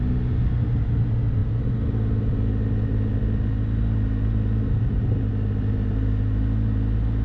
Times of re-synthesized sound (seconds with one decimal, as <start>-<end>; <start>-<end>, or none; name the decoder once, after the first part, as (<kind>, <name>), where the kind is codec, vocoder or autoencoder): none